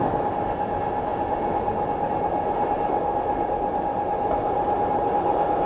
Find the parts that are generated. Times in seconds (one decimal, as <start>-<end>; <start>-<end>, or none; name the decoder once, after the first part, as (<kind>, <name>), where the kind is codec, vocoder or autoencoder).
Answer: none